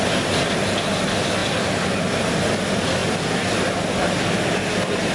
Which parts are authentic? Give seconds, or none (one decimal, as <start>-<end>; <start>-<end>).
0.0-5.1